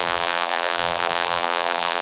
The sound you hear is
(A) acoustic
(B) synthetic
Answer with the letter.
B